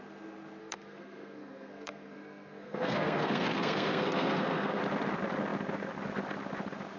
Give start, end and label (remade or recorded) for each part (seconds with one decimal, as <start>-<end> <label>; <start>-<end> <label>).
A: 0.0-0.6 recorded; 0.6-4.8 remade; 4.8-7.0 recorded